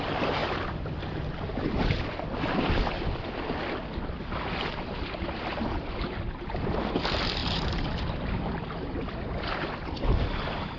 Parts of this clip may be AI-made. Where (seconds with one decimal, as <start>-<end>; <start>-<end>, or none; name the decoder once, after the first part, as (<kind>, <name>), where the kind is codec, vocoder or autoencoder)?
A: 0.4-1.4 (vocoder, BigVGAN v2); 5.5-6.4